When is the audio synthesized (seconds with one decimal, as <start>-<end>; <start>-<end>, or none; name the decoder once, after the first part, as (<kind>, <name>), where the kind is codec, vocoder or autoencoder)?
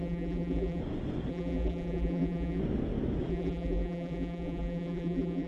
0.0-0.8 (vocoder, BigVGAN v2); 1.3-2.6; 3.3-5.5